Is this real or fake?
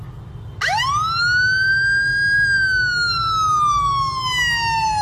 real